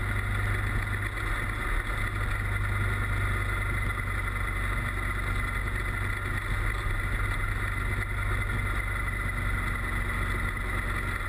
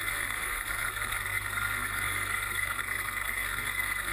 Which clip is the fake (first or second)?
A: second